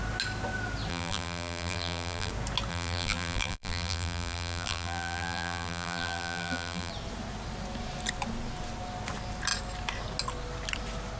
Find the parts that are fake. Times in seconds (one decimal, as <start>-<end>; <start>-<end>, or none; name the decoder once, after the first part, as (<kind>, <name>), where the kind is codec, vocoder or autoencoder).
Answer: 0.9-2.3 (vocoder, BigVGAN v2); 2.7-6.9